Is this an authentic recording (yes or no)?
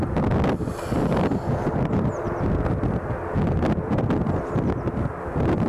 yes